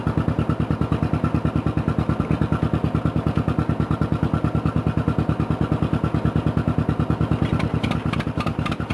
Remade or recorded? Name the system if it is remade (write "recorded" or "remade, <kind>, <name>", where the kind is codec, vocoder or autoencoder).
recorded